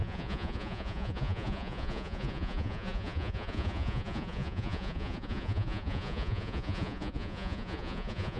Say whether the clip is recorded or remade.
remade